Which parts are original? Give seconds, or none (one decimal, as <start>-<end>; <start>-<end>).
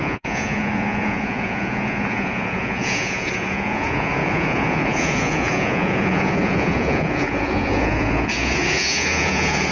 none